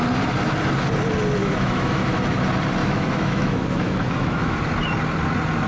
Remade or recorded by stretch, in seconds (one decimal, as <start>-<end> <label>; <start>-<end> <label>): 0.0-1.4 recorded; 1.4-2.2 remade; 2.2-2.8 recorded; 2.8-4.6 remade; 4.6-5.7 recorded